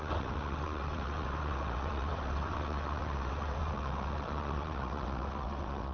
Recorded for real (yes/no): no